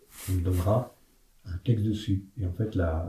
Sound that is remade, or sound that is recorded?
recorded